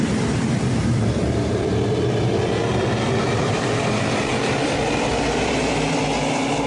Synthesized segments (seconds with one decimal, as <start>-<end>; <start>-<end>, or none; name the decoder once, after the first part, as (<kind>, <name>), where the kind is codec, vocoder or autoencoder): 0.0-6.7 (vocoder, BigVGAN v2)